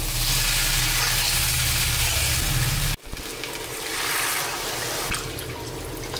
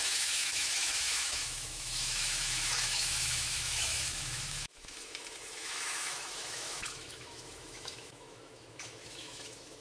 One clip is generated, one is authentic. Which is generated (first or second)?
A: second